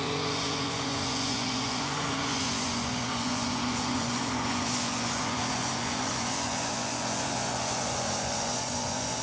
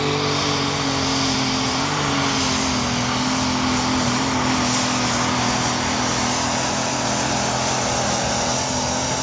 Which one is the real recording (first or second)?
second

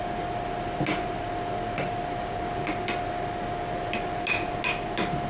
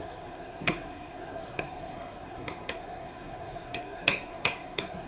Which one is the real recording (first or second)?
first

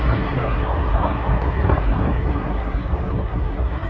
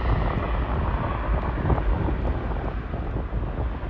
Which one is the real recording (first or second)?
second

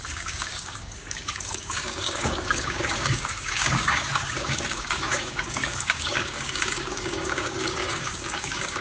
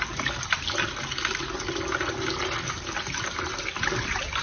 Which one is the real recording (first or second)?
second